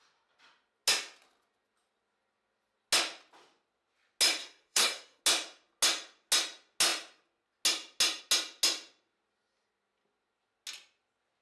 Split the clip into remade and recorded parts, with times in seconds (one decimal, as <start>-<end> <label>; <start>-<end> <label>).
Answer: 0.0-4.4 recorded; 4.4-5.2 remade; 5.2-11.4 recorded